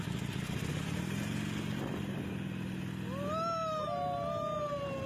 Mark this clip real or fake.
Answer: real